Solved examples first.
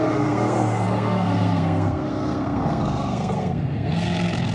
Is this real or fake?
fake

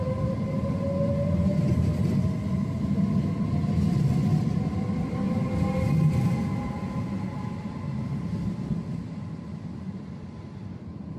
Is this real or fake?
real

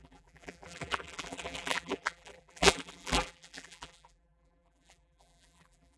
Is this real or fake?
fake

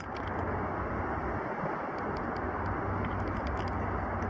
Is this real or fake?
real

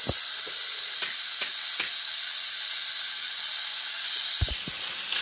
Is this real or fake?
real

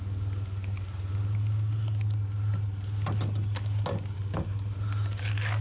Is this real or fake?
real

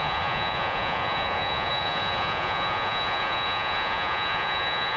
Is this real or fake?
fake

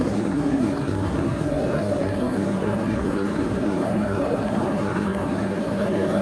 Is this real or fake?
fake